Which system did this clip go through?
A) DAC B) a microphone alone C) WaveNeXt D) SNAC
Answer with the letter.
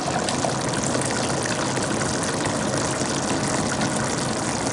B